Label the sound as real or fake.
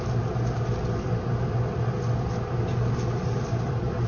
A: real